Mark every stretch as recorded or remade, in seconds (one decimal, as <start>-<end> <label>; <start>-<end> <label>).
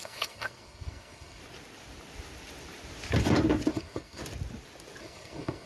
0.0-1.4 remade; 1.4-3.7 recorded; 3.7-4.2 remade; 4.2-5.0 recorded; 5.0-5.7 remade